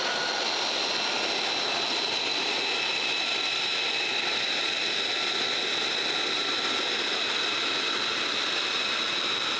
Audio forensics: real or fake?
real